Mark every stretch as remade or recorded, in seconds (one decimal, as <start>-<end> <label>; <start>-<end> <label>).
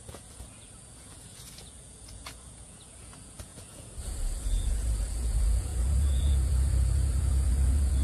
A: 0.0-8.0 remade